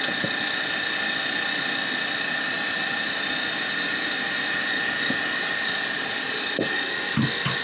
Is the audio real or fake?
real